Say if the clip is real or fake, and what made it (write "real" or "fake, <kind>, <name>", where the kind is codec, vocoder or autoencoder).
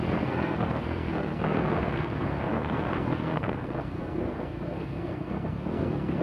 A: fake, codec, SNAC